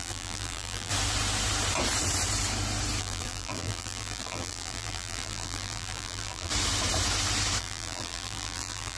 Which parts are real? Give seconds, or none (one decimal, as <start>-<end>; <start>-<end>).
0.9-3.0; 6.5-7.6